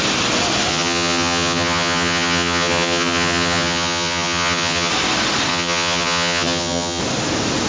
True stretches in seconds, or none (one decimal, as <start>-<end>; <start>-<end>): 0.0-0.7; 4.9-5.5; 7.0-7.7